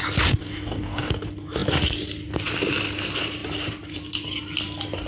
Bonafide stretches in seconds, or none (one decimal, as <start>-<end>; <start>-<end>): 0.0-0.4; 1.1-5.1